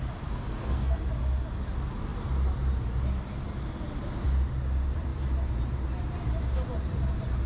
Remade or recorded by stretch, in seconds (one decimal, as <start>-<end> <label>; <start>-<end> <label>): 0.0-0.6 recorded; 0.6-1.1 remade; 1.1-7.5 recorded